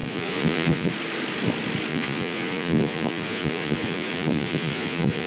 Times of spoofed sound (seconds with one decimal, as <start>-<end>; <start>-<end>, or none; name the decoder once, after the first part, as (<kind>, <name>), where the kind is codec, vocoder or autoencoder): 0.0-0.9 (vocoder, Vocos); 1.9-5.3